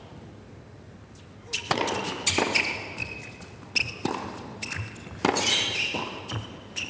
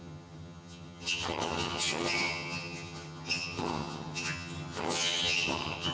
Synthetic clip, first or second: second